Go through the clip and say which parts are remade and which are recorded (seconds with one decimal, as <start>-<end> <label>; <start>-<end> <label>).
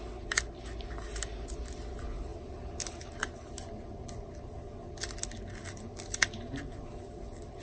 0.0-7.6 recorded